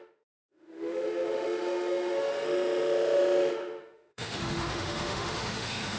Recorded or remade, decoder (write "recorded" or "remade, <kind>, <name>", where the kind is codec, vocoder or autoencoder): remade, autoencoder, DAC-VAE